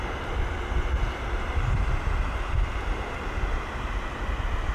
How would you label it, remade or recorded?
recorded